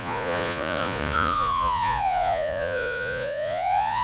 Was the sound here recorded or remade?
remade